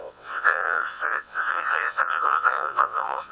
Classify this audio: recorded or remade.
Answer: remade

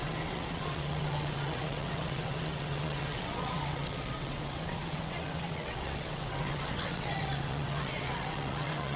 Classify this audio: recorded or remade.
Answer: remade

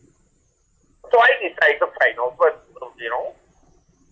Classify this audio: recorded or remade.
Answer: recorded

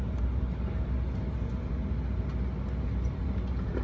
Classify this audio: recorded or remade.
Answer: recorded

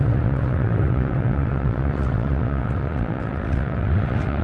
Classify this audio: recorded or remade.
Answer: remade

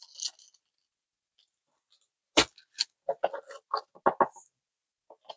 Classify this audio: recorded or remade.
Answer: recorded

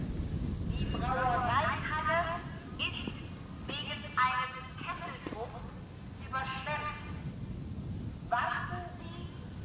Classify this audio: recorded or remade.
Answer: recorded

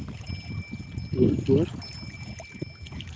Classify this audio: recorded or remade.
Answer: recorded